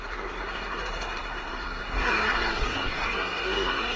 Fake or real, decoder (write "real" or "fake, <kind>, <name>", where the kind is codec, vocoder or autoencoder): fake, codec, SNAC